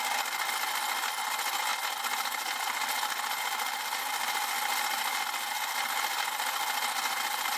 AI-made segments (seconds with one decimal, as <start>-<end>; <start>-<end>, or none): none